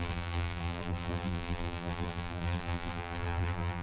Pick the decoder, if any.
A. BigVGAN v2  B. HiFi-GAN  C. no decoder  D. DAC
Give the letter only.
A